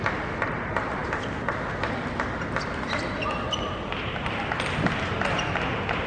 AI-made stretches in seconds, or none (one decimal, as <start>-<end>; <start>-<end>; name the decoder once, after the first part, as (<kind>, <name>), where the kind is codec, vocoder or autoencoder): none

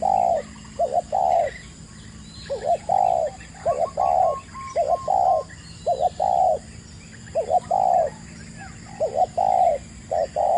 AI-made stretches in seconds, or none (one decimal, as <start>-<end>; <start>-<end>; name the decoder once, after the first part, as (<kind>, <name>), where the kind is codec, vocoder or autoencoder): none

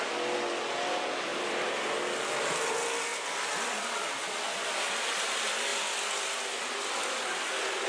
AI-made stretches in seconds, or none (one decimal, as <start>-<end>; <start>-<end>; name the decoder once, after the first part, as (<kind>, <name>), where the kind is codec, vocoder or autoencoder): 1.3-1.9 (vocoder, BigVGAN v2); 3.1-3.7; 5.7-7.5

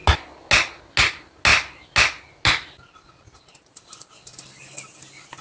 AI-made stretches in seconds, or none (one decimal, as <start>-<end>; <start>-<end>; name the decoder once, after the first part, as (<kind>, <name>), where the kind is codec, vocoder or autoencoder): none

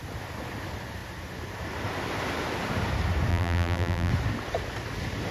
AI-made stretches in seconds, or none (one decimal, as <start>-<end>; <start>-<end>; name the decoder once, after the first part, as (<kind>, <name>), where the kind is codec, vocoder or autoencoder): 3.3-4.1 (vocoder, BigVGAN v2)